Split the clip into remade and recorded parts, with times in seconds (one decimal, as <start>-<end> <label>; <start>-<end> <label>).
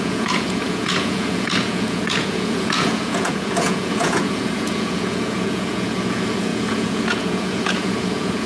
0.0-8.5 remade